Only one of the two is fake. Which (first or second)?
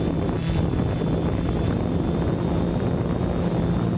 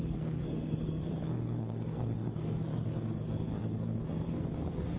second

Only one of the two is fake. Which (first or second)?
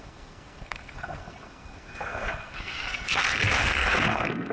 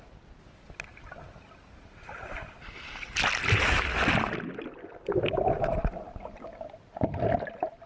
first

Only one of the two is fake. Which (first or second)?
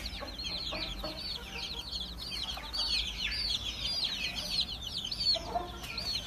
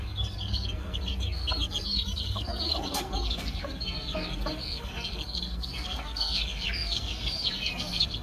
second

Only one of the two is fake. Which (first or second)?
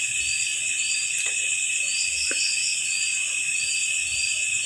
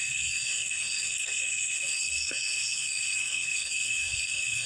second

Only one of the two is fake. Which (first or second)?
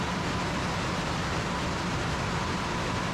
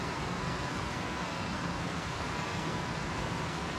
second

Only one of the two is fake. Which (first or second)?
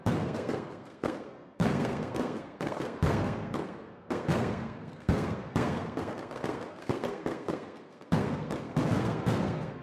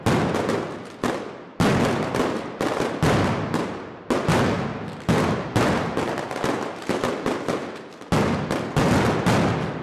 first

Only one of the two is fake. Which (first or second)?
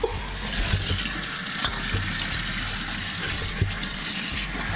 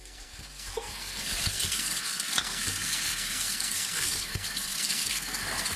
second